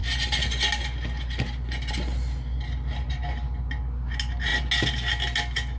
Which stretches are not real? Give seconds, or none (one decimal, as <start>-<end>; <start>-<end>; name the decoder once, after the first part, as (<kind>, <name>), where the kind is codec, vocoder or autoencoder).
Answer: none